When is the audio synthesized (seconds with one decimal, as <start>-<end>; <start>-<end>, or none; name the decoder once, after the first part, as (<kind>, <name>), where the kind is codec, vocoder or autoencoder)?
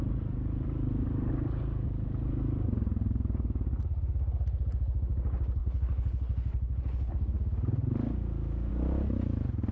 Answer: 5.6-7.1 (codec, HILCodec)